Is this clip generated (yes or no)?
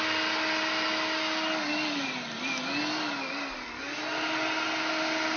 no